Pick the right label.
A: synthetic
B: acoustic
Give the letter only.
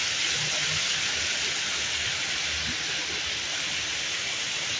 B